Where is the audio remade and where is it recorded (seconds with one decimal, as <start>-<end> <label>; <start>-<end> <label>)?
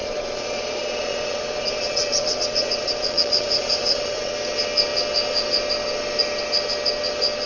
0.0-4.3 remade; 4.3-7.5 recorded